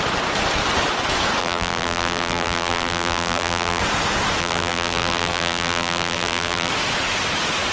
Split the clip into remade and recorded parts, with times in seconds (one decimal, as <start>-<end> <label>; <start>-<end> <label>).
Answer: 0.0-1.4 recorded; 1.4-3.8 remade; 3.8-4.4 recorded; 4.4-6.7 remade; 6.7-7.7 recorded